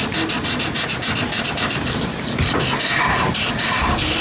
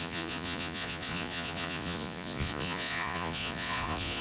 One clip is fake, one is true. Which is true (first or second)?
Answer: first